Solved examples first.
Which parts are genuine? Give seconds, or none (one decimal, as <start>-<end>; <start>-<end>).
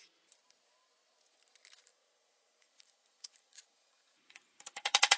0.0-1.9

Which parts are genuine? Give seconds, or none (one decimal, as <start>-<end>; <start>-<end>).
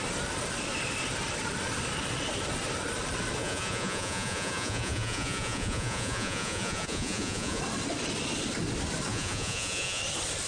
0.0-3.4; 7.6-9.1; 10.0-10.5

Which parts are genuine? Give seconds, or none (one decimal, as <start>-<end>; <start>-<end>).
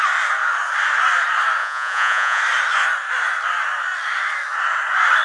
0.0-1.6; 2.4-5.2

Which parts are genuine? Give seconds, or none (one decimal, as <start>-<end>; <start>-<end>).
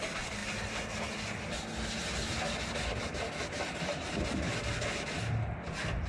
0.0-6.1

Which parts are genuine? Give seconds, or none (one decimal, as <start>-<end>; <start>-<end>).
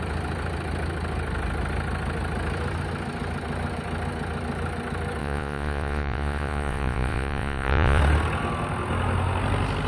0.0-5.2; 8.0-9.9